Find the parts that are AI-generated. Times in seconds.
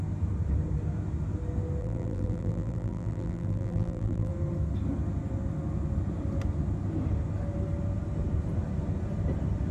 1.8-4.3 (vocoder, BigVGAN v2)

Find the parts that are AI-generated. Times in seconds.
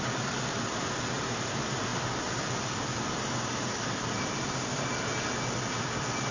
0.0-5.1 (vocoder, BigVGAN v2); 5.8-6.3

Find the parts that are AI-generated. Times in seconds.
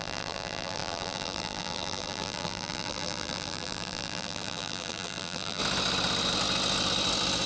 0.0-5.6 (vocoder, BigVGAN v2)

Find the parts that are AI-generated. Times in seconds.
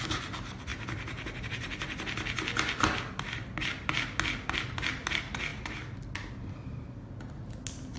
none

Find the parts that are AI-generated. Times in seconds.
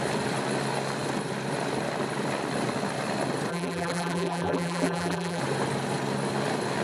3.5-5.4 (vocoder, BigVGAN v2)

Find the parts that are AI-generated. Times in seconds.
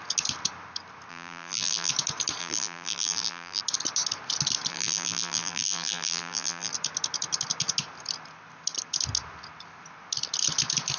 1.1-1.9 (vocoder, BigVGAN v2); 2.4-3.6; 4.7-6.7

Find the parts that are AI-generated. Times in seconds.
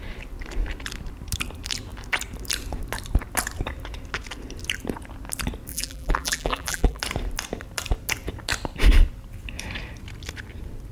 5.7-7.0 (vocoder, BigVGAN v2)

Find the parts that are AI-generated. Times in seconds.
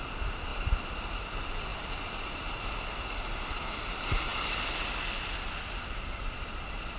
0.5-1.2 (vocoder, BigVGAN v2)